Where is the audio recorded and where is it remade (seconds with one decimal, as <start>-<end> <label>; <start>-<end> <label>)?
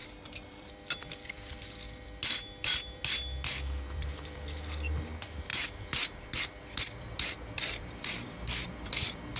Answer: 0.0-9.4 remade